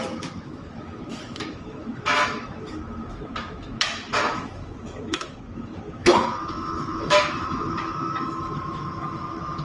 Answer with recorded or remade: remade